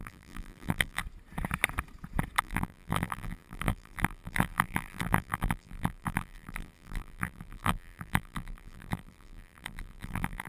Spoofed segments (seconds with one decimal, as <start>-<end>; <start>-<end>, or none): 0.0-1.0; 2.4-10.5